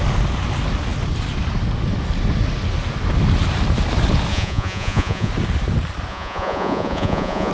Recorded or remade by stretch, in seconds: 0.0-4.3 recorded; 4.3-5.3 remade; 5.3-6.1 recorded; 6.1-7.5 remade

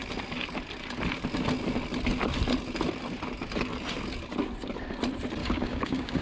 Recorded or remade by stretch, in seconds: 0.0-5.4 recorded; 5.4-6.2 remade

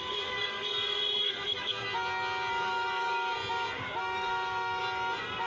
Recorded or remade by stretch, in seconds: 0.0-0.7 remade; 0.7-1.2 recorded; 1.2-1.9 remade; 1.9-2.5 recorded; 2.5-3.4 remade; 3.4-4.0 recorded; 4.0-4.8 remade; 4.8-5.5 recorded

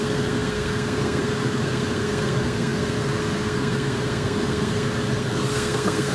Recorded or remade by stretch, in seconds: 0.0-6.1 remade

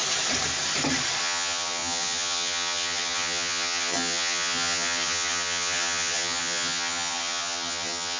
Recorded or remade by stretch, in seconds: 0.0-1.2 recorded; 1.2-8.2 remade

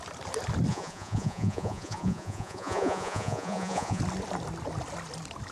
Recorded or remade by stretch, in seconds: 0.0-0.7 recorded; 0.7-4.0 remade; 4.0-5.5 recorded

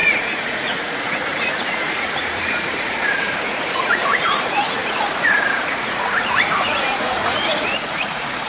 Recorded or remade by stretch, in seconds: 0.0-8.5 remade

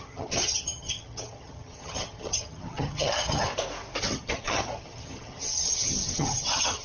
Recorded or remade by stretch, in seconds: 0.0-3.5 remade; 3.5-4.0 recorded; 4.0-6.8 remade